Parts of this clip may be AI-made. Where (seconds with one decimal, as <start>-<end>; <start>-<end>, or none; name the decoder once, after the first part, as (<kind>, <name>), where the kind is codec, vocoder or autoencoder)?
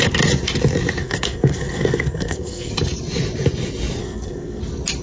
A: 1.0-2.7 (codec, SNAC); 4.0-4.6